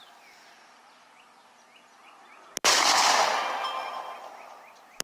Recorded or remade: recorded